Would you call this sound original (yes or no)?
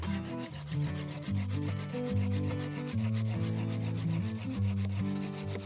yes